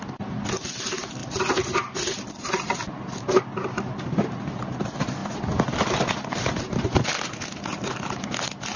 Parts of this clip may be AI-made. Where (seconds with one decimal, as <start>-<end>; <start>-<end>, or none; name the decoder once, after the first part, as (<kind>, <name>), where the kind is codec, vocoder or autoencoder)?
none